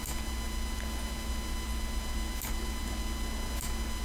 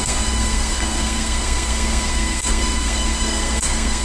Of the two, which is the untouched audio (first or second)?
first